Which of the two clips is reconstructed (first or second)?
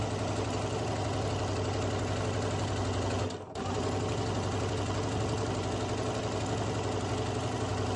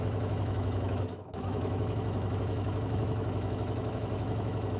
second